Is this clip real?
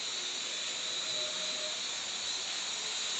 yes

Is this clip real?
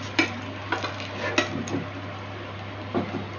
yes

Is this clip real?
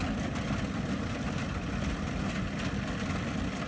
yes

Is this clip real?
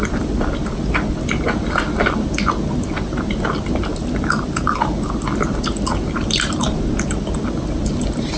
yes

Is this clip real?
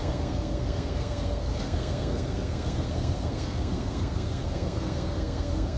no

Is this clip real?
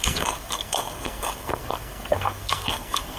no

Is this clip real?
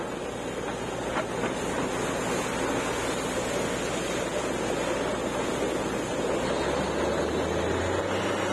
yes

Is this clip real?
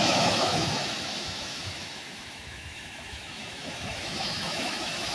no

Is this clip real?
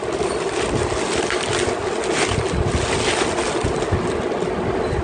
yes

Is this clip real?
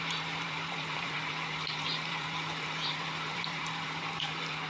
no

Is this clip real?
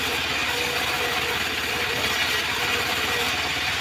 yes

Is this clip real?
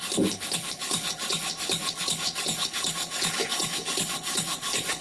no